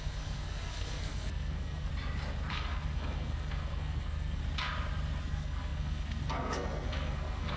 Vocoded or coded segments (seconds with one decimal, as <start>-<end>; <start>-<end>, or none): 0.0-1.9; 2.5-4.4; 5.2-7.6